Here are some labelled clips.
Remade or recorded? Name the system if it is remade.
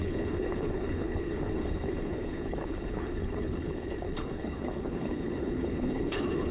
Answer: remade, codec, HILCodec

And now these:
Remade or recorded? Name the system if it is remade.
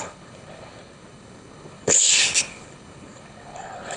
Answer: remade, codec, HILCodec